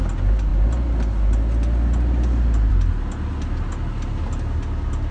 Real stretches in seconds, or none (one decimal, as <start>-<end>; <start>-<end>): 0.0-5.1